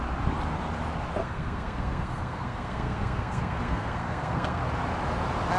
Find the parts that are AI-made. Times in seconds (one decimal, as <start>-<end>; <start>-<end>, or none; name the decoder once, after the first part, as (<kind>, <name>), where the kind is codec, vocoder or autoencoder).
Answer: 1.2-4.6 (codec, SNAC)